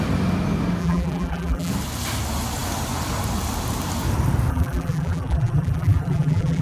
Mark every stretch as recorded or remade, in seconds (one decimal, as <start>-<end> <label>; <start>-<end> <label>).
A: 0.0-0.8 recorded; 0.8-1.7 remade; 1.7-4.5 recorded; 4.5-6.6 remade